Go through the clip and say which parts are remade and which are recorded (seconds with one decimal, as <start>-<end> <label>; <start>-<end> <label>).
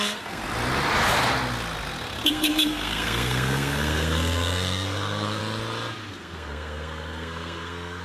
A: 0.0-0.4 remade; 0.4-2.3 recorded; 2.3-5.4 remade; 5.4-6.1 recorded; 6.1-8.0 remade